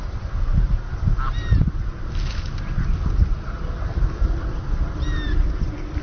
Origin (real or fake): real